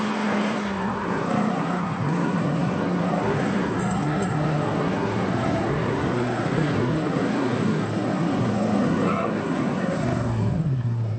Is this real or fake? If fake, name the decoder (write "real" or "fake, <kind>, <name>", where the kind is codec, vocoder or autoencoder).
fake, codec, SNAC